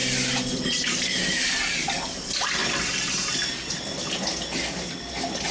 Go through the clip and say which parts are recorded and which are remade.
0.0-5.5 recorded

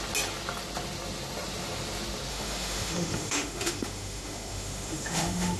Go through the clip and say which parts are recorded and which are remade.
0.0-2.3 recorded; 2.3-5.6 remade

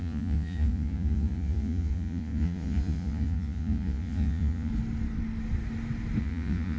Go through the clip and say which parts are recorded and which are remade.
0.0-4.7 remade; 4.7-6.2 recorded; 6.2-6.8 remade

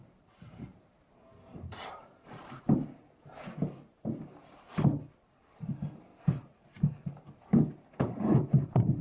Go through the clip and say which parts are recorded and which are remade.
0.0-4.4 remade; 4.4-5.4 recorded; 5.4-9.0 remade

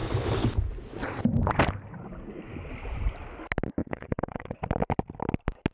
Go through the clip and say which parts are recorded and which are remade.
0.0-3.8 recorded; 3.8-4.6 remade; 4.6-5.7 recorded

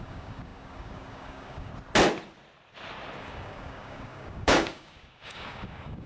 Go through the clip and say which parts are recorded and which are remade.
0.0-1.7 remade; 1.7-3.2 recorded; 3.2-6.1 remade